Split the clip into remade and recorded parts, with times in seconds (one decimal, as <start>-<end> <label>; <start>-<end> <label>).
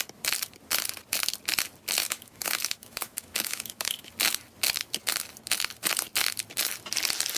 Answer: 0.0-2.0 recorded; 2.0-4.1 remade; 4.1-7.4 recorded